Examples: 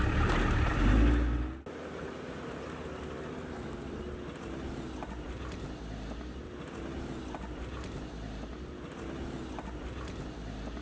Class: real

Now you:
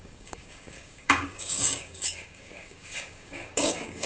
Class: fake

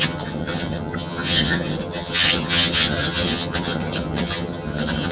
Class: fake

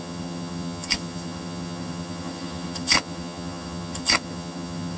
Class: fake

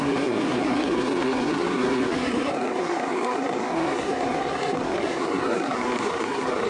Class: fake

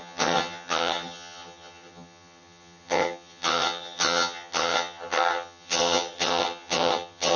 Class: fake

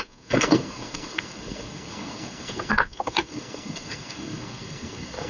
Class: fake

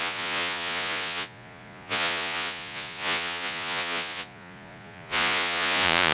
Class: fake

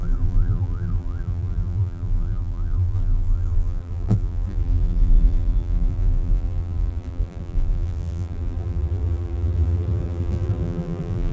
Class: fake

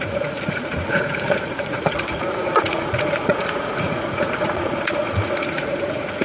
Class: fake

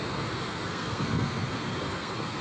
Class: fake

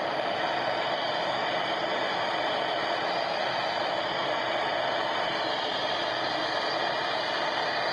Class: real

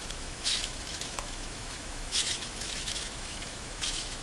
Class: fake